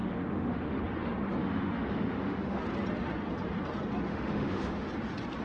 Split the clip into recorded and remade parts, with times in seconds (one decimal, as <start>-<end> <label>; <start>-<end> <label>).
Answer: 0.0-0.8 remade; 0.8-1.4 recorded; 1.4-2.6 remade; 2.6-4.1 recorded; 4.1-4.9 remade; 4.9-5.4 recorded

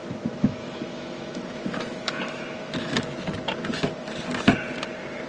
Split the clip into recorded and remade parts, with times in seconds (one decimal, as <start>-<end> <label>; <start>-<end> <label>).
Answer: 0.0-2.9 remade; 2.9-5.3 recorded

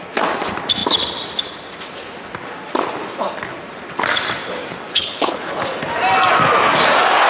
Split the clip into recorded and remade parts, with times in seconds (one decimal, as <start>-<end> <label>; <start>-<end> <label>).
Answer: 0.0-4.9 recorded; 4.9-5.5 remade; 5.5-7.3 recorded

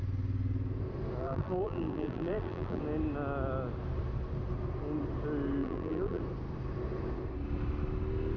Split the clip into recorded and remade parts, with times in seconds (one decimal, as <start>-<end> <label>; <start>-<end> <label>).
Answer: 0.0-1.2 recorded; 1.2-2.8 remade; 2.8-5.6 recorded; 5.6-6.2 remade; 6.2-8.4 recorded

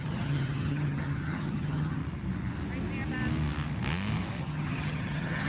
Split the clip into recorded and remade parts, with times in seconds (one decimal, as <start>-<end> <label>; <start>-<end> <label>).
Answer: 0.0-2.0 remade; 2.0-4.4 recorded; 4.4-5.5 remade

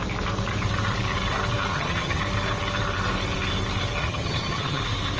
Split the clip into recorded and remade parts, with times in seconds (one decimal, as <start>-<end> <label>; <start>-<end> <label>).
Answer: 0.0-1.7 recorded; 1.7-2.2 remade; 2.2-4.0 recorded; 4.0-4.8 remade; 4.8-5.2 recorded

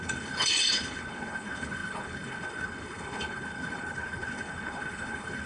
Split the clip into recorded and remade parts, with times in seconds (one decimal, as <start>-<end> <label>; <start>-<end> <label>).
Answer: 0.0-5.5 remade